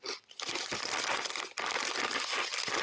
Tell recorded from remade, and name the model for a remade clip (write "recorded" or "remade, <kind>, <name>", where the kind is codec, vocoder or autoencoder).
recorded